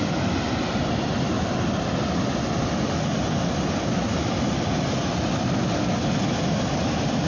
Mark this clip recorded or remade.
recorded